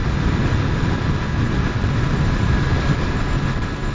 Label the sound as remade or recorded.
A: recorded